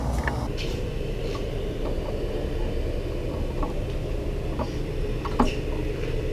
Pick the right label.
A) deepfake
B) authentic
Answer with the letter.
B